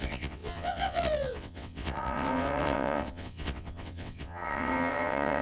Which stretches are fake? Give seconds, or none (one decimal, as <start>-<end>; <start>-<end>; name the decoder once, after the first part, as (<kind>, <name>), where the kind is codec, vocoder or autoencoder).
0.0-5.4 (vocoder, WaveNeXt)